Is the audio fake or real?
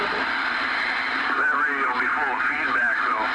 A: real